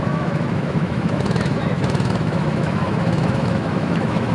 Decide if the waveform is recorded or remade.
remade